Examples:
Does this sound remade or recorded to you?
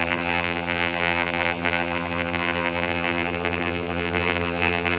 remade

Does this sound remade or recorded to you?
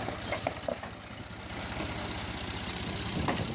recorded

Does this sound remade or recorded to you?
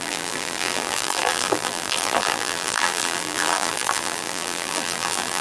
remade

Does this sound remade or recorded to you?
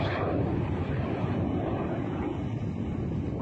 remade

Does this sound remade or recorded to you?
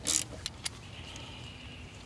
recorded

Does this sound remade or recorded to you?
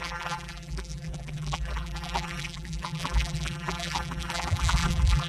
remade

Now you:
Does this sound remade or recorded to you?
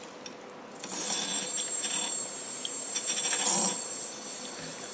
recorded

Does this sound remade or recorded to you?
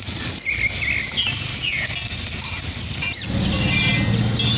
recorded